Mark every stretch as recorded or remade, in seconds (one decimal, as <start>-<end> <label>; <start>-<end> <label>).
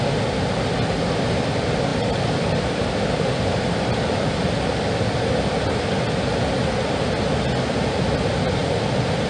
0.0-9.3 recorded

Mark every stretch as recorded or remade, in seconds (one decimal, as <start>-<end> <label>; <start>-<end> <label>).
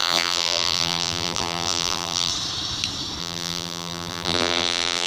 0.0-2.3 remade; 2.3-3.2 recorded; 3.2-5.1 remade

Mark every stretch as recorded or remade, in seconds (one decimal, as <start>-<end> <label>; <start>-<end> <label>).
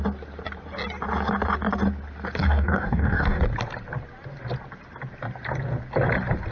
0.0-2.4 recorded; 2.4-3.4 remade; 3.4-6.5 recorded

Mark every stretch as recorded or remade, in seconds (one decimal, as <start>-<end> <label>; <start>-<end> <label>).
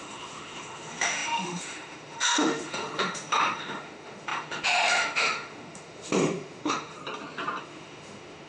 0.0-7.0 remade; 7.0-7.6 recorded; 7.6-8.5 remade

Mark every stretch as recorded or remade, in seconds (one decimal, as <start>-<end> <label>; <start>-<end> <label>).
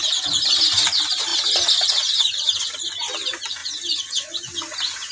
0.0-5.1 recorded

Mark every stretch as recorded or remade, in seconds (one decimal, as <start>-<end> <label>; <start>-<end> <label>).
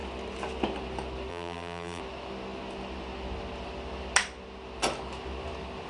0.0-1.3 recorded; 1.3-2.0 remade; 2.0-5.9 recorded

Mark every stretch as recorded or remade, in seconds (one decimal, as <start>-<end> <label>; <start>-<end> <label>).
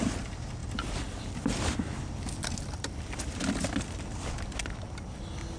0.0-0.6 recorded; 0.6-3.0 remade; 3.0-5.6 recorded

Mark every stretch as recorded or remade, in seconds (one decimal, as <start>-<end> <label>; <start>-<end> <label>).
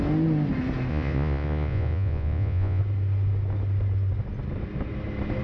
0.0-0.9 recorded; 0.9-2.8 remade; 2.8-5.4 recorded